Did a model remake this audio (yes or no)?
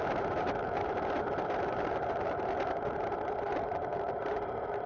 yes